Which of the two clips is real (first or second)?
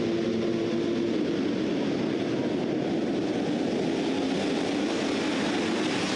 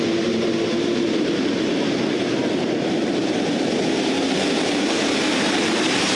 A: first